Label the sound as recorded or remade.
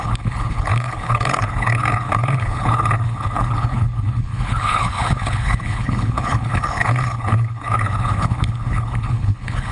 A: remade